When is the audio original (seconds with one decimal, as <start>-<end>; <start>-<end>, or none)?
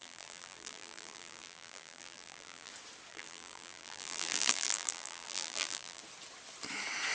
2.7-3.1; 6.0-7.1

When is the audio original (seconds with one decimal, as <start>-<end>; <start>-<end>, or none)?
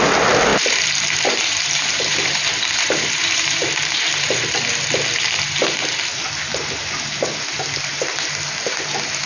0.0-0.5; 4.5-9.3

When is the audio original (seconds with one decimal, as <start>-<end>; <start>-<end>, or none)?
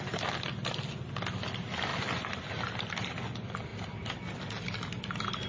0.0-1.9; 3.2-5.5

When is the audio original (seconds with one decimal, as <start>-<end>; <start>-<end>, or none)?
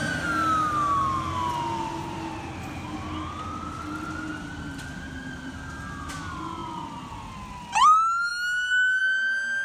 0.0-9.6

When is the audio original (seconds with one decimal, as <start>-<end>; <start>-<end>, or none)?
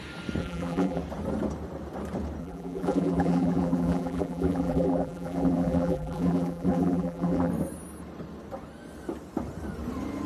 0.0-0.4; 1.0-2.4; 7.5-10.3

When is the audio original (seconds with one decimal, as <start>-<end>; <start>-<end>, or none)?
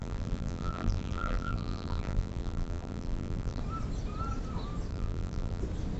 3.6-4.9; 5.6-6.0